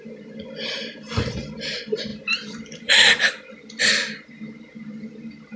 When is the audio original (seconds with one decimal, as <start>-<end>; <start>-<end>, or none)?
0.0-2.1; 3.8-5.6